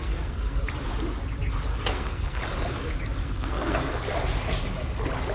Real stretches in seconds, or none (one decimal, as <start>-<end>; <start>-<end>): 0.6-1.7; 2.4-3.2; 4.0-5.3